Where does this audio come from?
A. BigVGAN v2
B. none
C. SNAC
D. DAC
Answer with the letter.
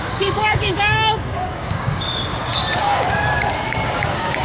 D